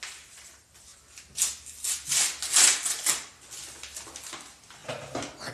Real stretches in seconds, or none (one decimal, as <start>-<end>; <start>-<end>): 0.0-5.5